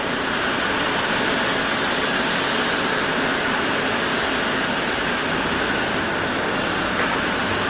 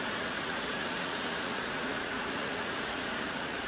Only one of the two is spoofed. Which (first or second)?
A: second